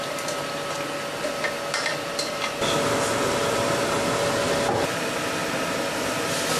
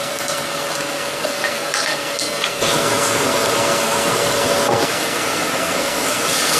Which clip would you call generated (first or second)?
second